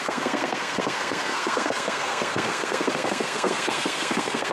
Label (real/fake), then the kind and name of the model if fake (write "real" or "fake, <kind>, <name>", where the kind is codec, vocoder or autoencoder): fake, codec, SNAC